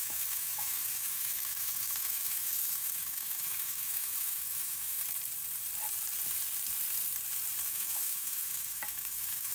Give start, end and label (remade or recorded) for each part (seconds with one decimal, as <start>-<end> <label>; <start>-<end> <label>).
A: 0.0-5.0 remade; 5.0-7.7 recorded; 7.7-9.5 remade